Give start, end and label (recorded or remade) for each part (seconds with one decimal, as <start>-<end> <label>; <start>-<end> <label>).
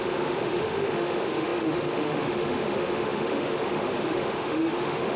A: 0.0-5.2 remade